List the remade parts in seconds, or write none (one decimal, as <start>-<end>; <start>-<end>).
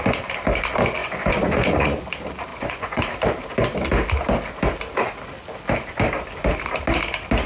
1.0-2.0; 2.5-3.0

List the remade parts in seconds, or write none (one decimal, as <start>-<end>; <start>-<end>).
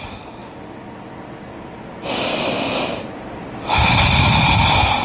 0.0-0.4; 3.4-5.0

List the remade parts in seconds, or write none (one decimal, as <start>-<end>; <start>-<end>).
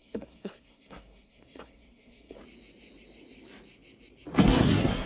0.0-2.4; 4.4-5.1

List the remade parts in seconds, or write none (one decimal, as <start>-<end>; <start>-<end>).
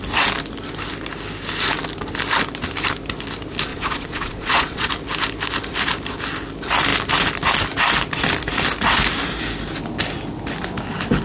3.7-4.9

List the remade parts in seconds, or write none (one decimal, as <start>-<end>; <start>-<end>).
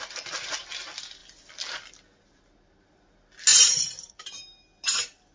1.2-1.9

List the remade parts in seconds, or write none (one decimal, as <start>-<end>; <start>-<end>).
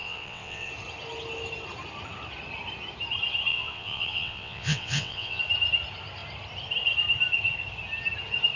0.0-0.7; 3.5-5.4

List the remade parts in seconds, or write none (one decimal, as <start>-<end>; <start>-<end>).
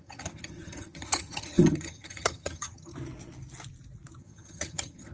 0.0-2.9; 4.2-5.1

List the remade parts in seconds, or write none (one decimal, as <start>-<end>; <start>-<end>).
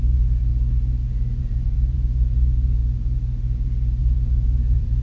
0.0-0.5; 1.4-2.8; 4.0-5.0